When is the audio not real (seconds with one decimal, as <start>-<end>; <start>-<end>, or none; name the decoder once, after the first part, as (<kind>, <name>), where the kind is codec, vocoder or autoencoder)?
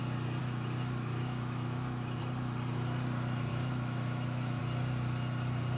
0.4-2.2 (autoencoder, DAC-VAE); 3.5-4.6